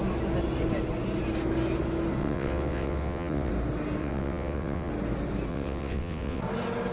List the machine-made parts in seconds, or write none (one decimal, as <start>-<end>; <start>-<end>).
2.2-3.5; 4.0-4.9; 5.5-6.4